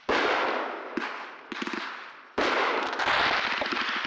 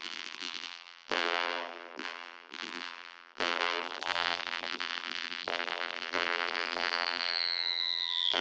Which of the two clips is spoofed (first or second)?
second